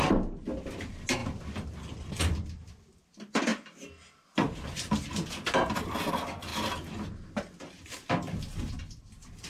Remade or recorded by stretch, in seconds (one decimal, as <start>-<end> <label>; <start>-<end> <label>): 0.0-9.5 recorded